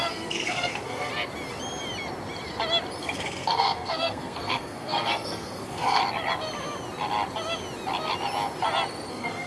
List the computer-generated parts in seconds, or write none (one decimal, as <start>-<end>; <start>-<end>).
0.0-1.1; 3.0-6.0; 9.1-9.5